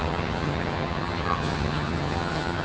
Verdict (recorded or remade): remade